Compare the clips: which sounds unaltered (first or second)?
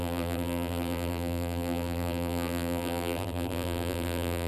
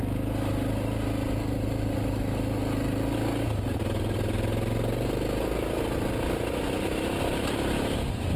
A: second